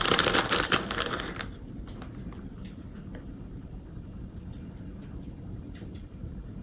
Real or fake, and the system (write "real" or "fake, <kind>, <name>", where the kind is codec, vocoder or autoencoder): fake, vocoder, BigVGAN v2